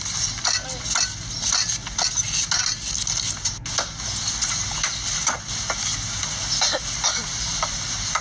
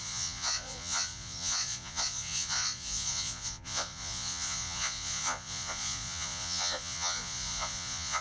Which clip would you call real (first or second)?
first